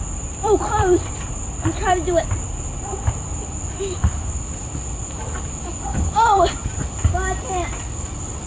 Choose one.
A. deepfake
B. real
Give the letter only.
A